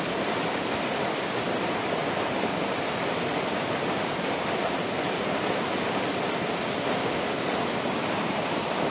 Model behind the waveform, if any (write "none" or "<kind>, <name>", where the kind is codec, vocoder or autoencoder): vocoder, BigVGAN v2